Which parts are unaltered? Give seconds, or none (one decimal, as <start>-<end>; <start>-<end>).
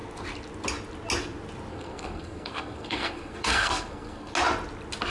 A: 0.0-1.7; 4.3-5.1